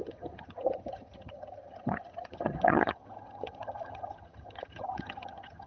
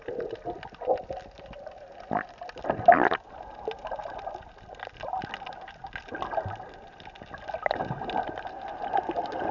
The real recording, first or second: second